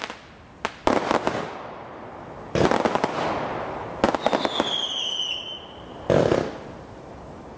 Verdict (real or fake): real